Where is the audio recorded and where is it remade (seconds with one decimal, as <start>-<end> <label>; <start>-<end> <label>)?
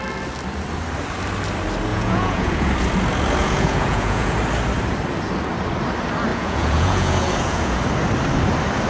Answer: 0.0-1.9 recorded; 1.9-2.7 remade; 2.7-3.4 recorded; 3.4-4.3 remade; 4.3-6.3 recorded; 6.3-7.8 remade; 7.8-8.9 recorded